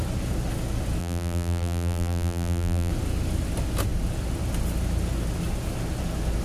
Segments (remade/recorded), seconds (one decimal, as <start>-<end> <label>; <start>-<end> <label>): 0.0-1.0 recorded; 1.0-2.9 remade; 2.9-6.4 recorded

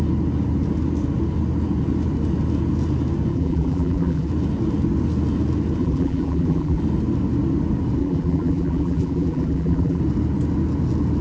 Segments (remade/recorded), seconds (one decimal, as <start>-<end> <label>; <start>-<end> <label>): 0.0-3.3 recorded; 3.3-4.3 remade; 4.3-5.8 recorded; 5.8-6.8 remade; 6.8-8.0 recorded; 8.0-10.0 remade; 10.0-11.2 recorded